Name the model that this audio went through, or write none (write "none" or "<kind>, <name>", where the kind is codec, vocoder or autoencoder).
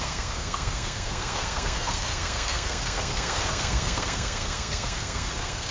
codec, SNAC